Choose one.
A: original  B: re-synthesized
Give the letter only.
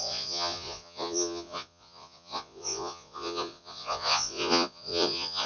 B